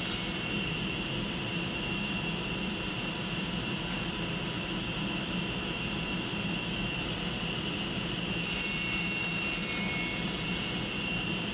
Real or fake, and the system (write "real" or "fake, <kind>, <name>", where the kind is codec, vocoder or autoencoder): fake, vocoder, BigVGAN v2